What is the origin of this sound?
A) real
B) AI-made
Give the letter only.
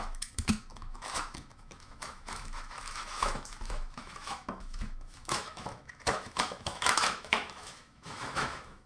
B